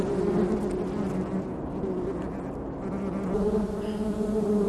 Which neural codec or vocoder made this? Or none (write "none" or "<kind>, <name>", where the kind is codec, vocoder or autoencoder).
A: none